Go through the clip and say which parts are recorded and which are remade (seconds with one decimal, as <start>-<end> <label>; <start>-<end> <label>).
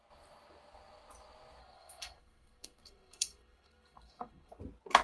0.0-1.6 recorded; 1.6-4.6 remade; 4.6-5.0 recorded